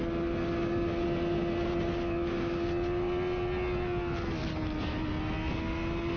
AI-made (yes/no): no